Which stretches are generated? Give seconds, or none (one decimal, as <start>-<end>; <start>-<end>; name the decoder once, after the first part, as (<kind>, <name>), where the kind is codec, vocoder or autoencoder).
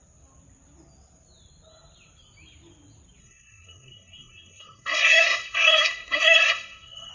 3.2-7.1 (codec, SNAC)